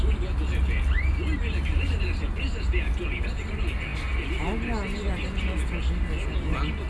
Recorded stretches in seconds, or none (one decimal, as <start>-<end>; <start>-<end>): 0.0-6.9